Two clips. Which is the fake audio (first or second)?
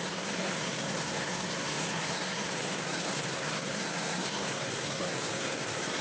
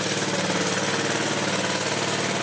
first